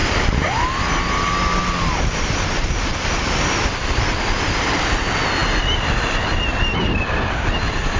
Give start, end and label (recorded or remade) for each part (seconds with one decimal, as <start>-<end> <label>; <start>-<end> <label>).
0.0-8.0 recorded

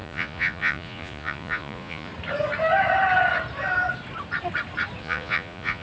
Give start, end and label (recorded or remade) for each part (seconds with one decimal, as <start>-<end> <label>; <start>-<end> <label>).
0.0-2.1 remade; 2.1-5.0 recorded; 5.0-5.8 remade

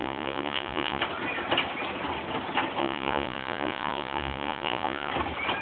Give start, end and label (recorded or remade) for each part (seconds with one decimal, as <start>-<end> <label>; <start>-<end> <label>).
0.0-1.0 remade; 1.0-2.8 recorded; 2.8-5.1 remade; 5.1-5.6 recorded

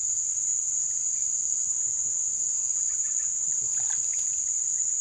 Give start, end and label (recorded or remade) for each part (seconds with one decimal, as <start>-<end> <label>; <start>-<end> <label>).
0.0-5.0 recorded

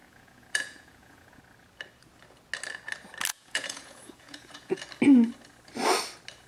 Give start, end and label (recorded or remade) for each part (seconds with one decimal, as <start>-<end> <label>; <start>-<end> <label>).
0.0-1.4 remade; 1.4-3.3 recorded; 3.3-4.8 remade; 4.8-6.5 recorded

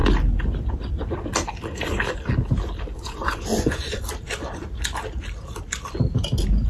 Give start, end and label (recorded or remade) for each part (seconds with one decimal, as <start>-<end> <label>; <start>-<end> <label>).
0.0-2.9 recorded; 2.9-4.0 remade; 4.0-6.7 recorded

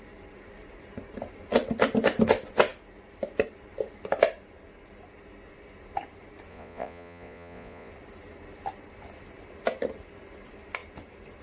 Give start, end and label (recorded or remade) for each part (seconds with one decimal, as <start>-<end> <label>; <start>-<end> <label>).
0.0-6.5 recorded; 6.5-7.9 remade; 7.9-11.4 recorded